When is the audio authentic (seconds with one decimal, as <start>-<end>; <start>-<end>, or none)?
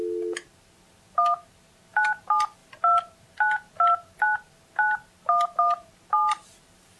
0.0-7.0